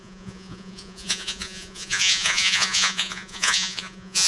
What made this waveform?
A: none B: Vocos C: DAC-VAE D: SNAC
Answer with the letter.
B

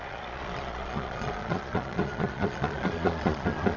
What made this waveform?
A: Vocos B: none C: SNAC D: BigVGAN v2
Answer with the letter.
A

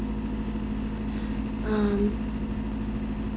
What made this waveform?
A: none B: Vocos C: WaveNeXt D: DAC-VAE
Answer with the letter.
A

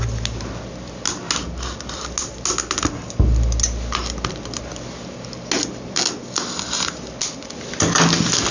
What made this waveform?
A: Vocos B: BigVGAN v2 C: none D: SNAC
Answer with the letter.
C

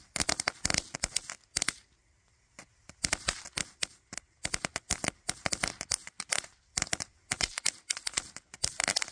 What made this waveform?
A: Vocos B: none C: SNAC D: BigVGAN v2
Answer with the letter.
B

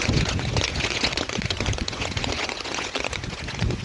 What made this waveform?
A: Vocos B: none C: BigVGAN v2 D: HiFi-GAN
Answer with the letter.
A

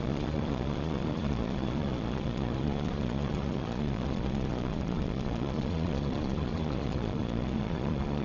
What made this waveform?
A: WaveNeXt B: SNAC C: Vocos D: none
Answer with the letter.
C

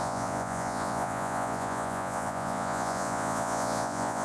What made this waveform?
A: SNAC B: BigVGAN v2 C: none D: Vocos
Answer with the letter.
D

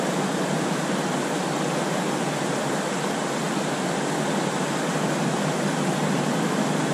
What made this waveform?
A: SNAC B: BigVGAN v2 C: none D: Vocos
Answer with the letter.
C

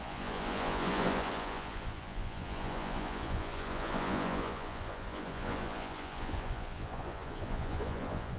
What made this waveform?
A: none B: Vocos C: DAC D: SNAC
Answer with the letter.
B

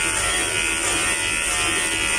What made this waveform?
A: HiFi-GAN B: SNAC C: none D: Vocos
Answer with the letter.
C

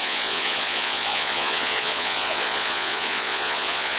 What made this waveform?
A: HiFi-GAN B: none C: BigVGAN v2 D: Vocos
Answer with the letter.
D